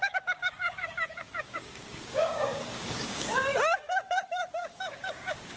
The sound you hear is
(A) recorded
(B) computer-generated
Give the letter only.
B